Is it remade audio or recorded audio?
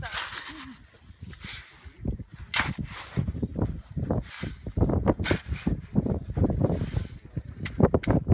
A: recorded